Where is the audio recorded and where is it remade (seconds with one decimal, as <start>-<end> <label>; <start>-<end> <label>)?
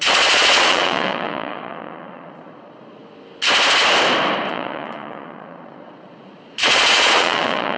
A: 0.0-3.0 remade; 3.0-4.5 recorded; 4.5-7.8 remade